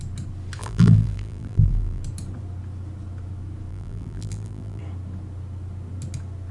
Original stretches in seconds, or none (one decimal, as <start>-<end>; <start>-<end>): 0.0-0.6; 2.0-3.7; 4.8-6.5

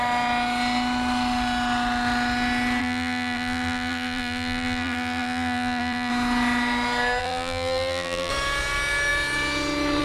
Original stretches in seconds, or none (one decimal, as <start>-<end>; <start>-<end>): 0.0-2.8; 6.1-7.2; 8.3-10.0

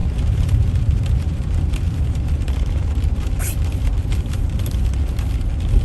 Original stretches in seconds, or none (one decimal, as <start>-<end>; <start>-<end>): 3.5-4.0; 4.7-5.8